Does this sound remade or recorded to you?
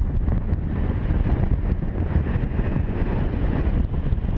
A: remade